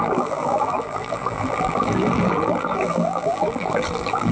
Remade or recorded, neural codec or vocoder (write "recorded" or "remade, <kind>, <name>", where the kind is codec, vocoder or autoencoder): remade, vocoder, BigVGAN v2